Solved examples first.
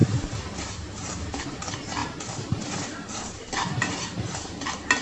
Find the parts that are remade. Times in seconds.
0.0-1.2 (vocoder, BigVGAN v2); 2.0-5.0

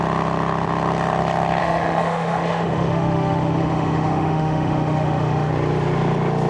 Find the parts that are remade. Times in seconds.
1.6-5.5 (autoencoder, DAC-VAE)

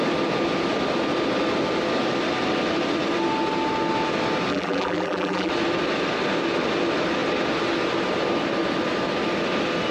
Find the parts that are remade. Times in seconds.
4.5-5.5 (vocoder, BigVGAN v2)

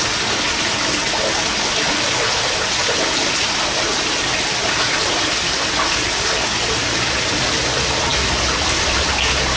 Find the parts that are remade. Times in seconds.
none

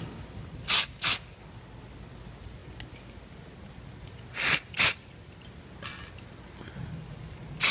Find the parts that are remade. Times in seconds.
none

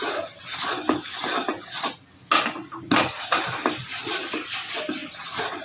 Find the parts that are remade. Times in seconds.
none

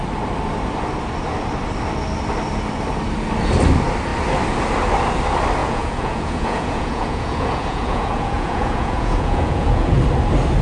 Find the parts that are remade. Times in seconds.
5.6-10.0 (vocoder, Vocos)

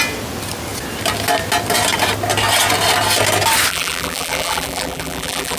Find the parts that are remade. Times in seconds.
3.7-5.6 (vocoder, BigVGAN v2)